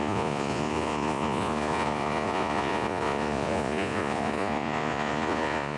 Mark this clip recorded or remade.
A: remade